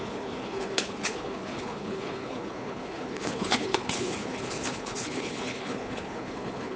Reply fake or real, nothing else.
fake